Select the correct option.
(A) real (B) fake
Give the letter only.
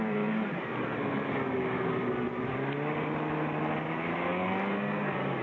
B